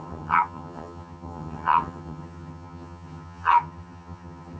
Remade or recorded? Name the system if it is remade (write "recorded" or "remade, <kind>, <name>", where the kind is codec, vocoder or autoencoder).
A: remade, vocoder, HiFi-GAN